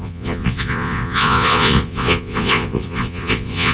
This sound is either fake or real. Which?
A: fake